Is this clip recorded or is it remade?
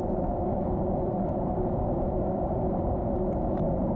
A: remade